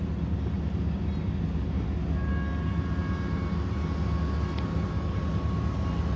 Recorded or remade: recorded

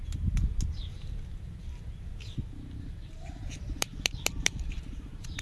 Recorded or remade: remade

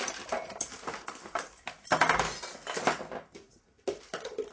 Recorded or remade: recorded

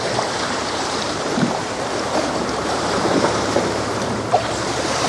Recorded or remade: remade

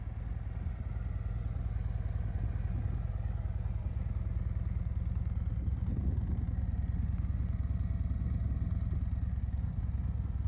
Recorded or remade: recorded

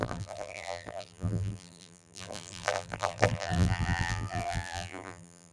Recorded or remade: remade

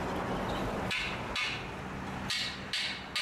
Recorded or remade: recorded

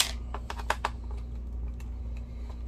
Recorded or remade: recorded